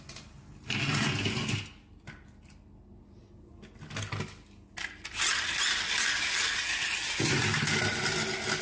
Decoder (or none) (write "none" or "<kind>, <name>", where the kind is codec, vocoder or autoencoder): none